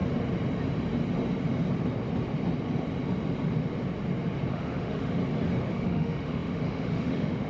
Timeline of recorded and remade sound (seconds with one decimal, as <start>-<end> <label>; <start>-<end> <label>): 0.0-4.5 recorded; 4.5-5.2 remade; 5.2-5.7 recorded; 5.7-7.5 remade